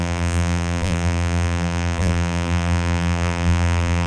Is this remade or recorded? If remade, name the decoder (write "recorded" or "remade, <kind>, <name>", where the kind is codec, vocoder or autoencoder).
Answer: remade, vocoder, BigVGAN v2